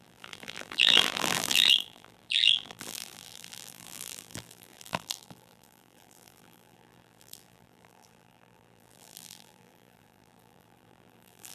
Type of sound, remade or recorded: remade